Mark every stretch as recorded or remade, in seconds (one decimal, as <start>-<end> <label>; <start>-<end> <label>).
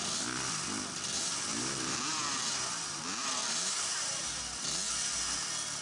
0.0-1.5 recorded; 1.5-2.4 remade; 2.4-3.4 recorded; 3.4-4.4 remade; 4.4-5.8 recorded